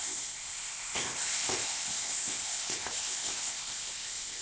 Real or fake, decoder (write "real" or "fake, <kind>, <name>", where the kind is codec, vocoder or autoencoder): fake, codec, ZipCodec